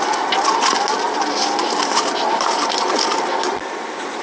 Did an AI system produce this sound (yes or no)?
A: no